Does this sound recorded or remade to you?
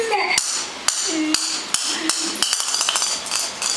recorded